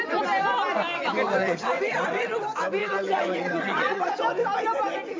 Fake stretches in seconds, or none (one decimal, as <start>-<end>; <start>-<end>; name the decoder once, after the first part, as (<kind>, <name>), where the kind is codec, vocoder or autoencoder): 1.4-2.4 (vocoder, WaveNeXt); 2.8-4.2